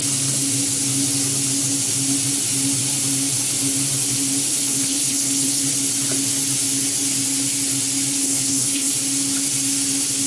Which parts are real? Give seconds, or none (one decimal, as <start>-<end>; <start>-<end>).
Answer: 0.0-4.5; 5.6-8.2; 8.9-10.3